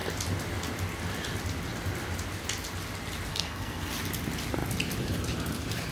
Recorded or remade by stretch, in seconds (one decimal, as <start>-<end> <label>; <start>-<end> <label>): 0.0-3.3 recorded; 3.3-3.9 remade; 3.9-5.9 recorded